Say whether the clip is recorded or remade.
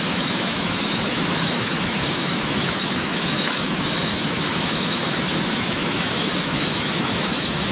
remade